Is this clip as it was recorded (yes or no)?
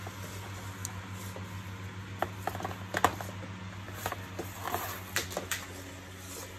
yes